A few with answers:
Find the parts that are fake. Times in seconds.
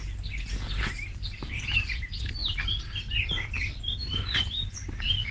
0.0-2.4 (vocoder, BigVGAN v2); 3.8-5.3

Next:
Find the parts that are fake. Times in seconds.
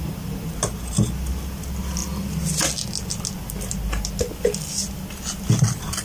none